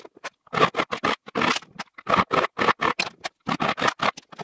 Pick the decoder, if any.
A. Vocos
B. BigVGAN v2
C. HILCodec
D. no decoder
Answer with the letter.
D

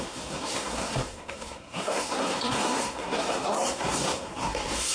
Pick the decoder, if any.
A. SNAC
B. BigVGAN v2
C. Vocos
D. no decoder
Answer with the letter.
A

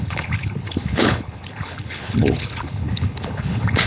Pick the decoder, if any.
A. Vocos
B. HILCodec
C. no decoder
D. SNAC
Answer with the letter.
B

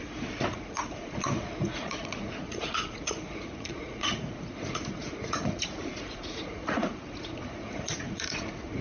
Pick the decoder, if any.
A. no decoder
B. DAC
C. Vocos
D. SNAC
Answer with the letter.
C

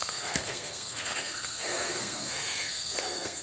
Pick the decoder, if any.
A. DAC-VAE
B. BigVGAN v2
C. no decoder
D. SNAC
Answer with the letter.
D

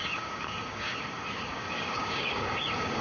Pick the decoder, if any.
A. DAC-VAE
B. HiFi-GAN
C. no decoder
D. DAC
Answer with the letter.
D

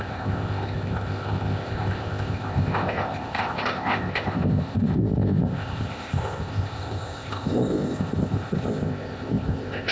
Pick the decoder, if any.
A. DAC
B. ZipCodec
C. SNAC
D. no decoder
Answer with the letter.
B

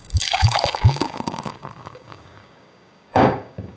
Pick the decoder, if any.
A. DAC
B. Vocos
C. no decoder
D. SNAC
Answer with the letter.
A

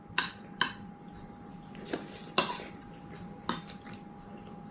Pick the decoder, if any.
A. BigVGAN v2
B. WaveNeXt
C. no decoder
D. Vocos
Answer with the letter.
C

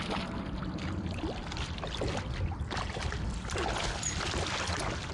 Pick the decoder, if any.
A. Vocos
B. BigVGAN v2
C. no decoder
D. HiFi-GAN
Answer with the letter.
C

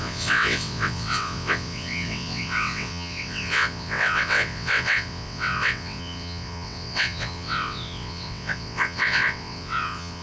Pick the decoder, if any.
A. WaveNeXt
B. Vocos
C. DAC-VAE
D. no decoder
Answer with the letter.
A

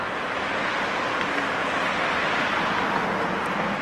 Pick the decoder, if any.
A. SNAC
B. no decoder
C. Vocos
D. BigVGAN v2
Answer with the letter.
B